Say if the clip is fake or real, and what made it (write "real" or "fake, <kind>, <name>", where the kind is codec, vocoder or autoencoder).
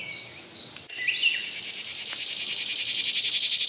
real